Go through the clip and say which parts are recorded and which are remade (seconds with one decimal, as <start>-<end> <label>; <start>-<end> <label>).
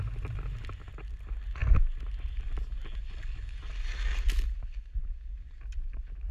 0.0-6.3 recorded